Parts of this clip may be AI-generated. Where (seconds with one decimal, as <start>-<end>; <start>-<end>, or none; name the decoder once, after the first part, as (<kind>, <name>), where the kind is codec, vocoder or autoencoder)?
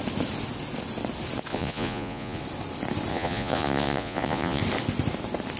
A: 1.5-2.4 (vocoder, Vocos); 3.1-4.6